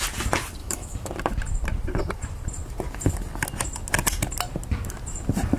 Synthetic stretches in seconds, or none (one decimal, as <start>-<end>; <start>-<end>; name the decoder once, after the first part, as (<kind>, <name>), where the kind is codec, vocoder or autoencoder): 0.6-1.1 (autoencoder, DAC-VAE)